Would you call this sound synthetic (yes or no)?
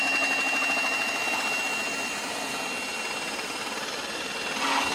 no